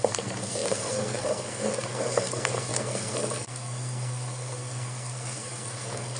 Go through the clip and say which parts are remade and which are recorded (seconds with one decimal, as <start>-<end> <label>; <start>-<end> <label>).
0.0-6.2 remade